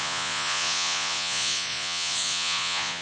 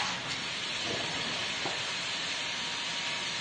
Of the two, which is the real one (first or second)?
second